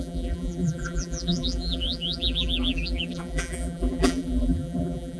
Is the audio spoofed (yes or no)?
yes